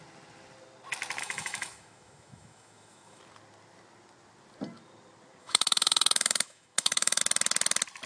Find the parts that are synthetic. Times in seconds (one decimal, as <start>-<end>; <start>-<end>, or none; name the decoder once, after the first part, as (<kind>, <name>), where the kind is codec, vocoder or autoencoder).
1.2-3.2 (autoencoder, DAC-VAE); 5.4-7.2